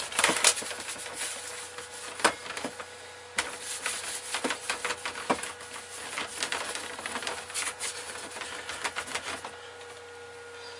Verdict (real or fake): real